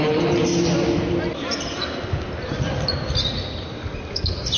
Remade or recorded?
recorded